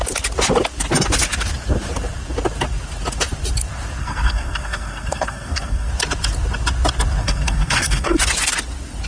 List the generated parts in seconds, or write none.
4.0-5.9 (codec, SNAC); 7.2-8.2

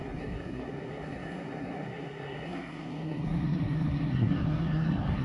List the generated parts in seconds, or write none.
0.0-5.2 (codec, SNAC)

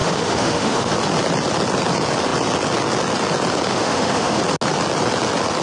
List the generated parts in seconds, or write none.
0.0-0.9 (autoencoder, DAC-VAE); 3.7-4.4

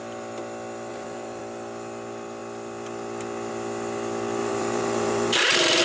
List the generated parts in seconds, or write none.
0.9-1.4 (vocoder, BigVGAN v2); 4.4-5.8